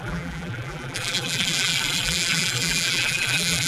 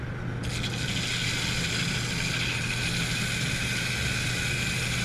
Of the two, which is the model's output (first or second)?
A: first